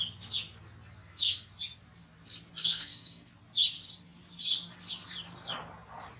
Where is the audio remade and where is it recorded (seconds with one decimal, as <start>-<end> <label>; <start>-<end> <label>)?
0.0-1.0 recorded; 1.0-1.5 remade; 1.5-2.6 recorded; 2.6-3.3 remade; 3.3-6.2 recorded